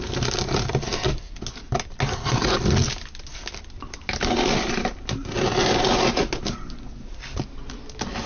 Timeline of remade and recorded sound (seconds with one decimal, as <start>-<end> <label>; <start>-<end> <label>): 0.0-8.3 recorded